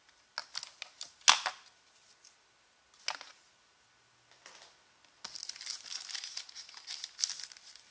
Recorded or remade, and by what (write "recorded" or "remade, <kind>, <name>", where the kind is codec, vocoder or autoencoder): recorded